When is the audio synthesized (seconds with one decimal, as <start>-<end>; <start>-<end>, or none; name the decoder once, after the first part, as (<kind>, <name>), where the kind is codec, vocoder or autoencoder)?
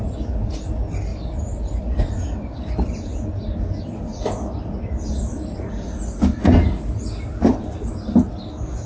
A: 1.1-5.6 (vocoder, BigVGAN v2); 7.3-7.9